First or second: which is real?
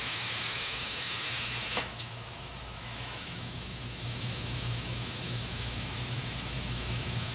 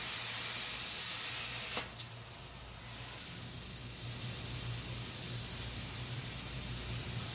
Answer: second